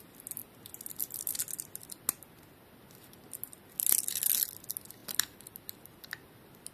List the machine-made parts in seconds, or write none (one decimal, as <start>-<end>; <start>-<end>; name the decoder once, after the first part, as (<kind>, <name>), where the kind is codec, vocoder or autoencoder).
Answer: none